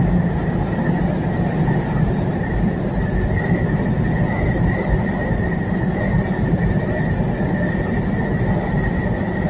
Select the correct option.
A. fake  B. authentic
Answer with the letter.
B